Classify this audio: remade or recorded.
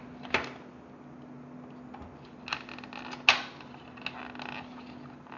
recorded